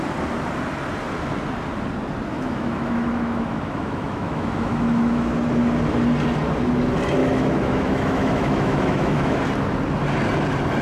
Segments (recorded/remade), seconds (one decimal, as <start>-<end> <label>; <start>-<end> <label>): 0.0-2.3 recorded; 2.3-5.3 remade; 5.3-7.2 recorded; 7.2-9.4 remade; 9.4-10.8 recorded

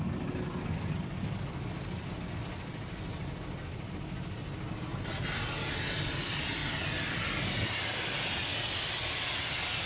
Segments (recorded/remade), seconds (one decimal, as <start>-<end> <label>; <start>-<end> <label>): 0.0-9.9 recorded

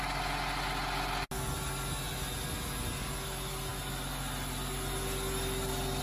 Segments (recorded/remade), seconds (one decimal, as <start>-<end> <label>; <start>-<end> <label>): 0.0-6.0 recorded

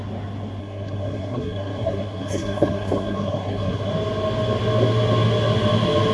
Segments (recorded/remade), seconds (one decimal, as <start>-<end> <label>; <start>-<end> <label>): 0.0-0.6 recorded; 0.6-3.9 remade; 3.9-6.1 recorded

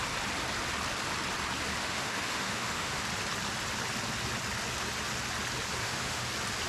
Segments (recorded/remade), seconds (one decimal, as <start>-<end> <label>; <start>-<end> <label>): 0.0-1.8 recorded; 1.8-3.0 remade; 3.0-5.8 recorded; 5.8-6.3 remade; 6.3-6.7 recorded

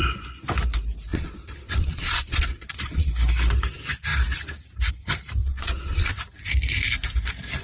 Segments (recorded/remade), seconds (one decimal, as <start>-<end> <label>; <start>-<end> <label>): 0.0-1.1 recorded; 1.1-3.1 remade; 3.1-5.4 recorded; 5.4-6.1 remade; 6.1-7.6 recorded

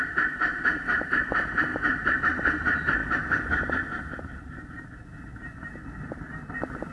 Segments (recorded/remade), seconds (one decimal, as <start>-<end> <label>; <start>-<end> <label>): 0.0-6.9 recorded

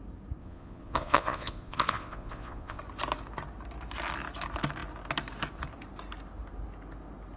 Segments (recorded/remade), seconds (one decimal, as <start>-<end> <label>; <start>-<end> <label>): 0.0-0.4 recorded; 0.4-2.8 remade; 2.8-7.4 recorded